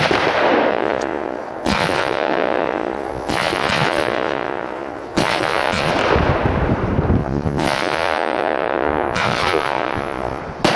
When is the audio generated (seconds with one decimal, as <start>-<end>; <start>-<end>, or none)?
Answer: 0.7-5.9; 7.2-10.4